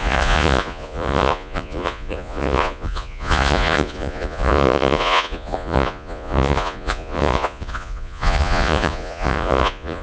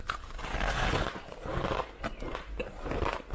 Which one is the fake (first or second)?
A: first